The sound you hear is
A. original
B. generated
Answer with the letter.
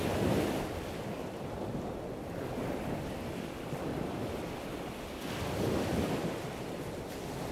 A